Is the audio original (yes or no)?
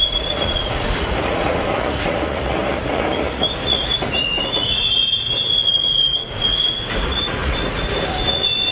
no